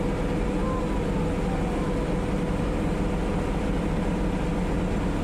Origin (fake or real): real